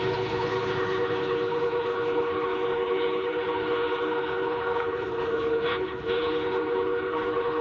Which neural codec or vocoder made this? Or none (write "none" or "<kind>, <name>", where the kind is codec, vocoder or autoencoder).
codec, HILCodec